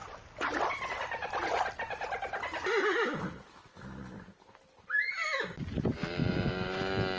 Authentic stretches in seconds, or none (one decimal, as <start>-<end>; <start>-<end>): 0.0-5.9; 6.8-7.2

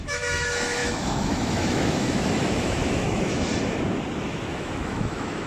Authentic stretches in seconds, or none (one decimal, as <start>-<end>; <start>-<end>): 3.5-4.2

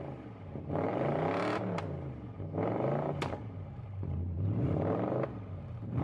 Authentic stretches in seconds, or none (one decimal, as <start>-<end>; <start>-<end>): none